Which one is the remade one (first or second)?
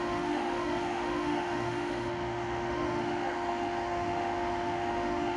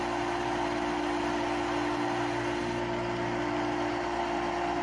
first